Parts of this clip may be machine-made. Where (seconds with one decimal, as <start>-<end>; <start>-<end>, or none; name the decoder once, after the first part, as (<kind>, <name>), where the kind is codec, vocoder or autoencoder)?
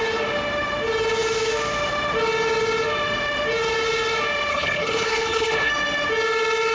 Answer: 4.5-5.7 (codec, HILCodec)